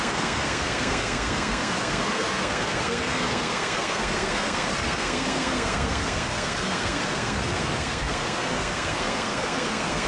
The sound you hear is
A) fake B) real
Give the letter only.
A